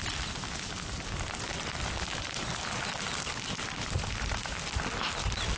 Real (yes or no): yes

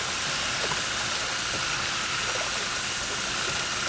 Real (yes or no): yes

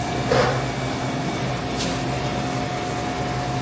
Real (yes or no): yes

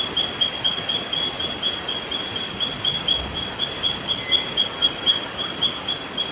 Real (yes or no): yes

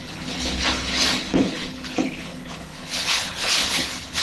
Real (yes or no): no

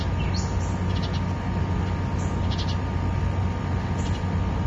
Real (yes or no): yes